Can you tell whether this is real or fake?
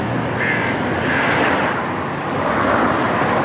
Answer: real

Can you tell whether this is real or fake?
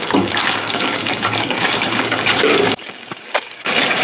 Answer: fake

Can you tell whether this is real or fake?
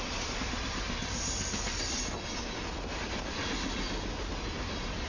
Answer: real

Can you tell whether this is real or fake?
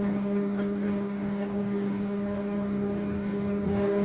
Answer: fake